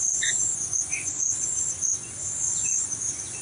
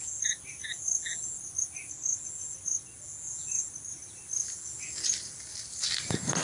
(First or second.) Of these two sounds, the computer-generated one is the first